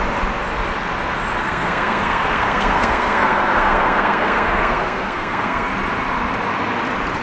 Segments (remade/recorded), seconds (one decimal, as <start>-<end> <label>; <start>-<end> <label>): 0.0-1.4 recorded; 1.4-5.7 remade; 5.7-7.2 recorded